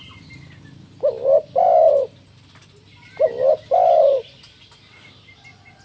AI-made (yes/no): no